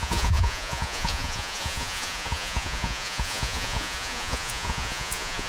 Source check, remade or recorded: remade